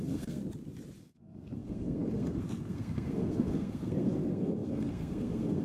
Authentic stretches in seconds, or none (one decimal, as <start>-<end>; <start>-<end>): 0.4-1.0